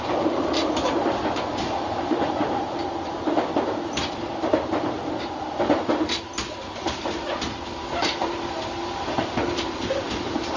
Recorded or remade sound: remade